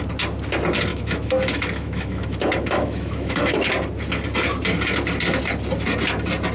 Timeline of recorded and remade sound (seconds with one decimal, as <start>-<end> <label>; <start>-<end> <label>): 0.0-0.9 recorded; 0.9-3.7 remade; 3.7-6.5 recorded

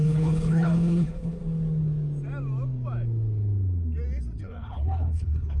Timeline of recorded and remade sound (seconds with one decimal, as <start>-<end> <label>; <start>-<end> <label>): 0.0-1.4 remade; 1.4-4.4 recorded; 4.4-5.6 remade

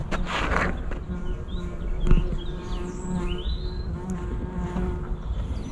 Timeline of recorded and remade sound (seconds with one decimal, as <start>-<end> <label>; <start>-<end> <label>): 0.0-5.7 recorded

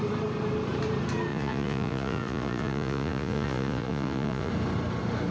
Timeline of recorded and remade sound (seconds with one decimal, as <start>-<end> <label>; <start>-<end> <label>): 0.0-1.3 recorded; 1.3-4.5 remade; 4.5-5.3 recorded

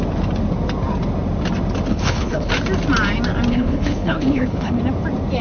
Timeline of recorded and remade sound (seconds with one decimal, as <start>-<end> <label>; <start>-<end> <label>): 0.0-1.9 recorded; 1.9-2.5 remade; 2.5-3.5 recorded; 3.5-4.8 remade; 4.8-5.4 recorded

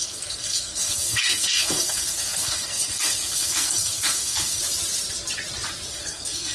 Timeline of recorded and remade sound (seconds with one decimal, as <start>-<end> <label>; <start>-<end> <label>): 0.0-4.6 remade; 4.6-5.9 recorded; 5.9-6.5 remade

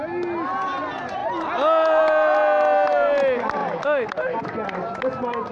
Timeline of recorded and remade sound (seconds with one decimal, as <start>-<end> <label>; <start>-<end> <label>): 0.0-5.5 recorded

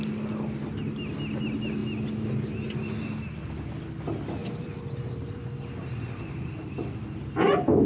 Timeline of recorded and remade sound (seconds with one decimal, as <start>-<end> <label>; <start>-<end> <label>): 0.0-4.4 recorded; 4.4-5.4 remade; 5.4-7.9 recorded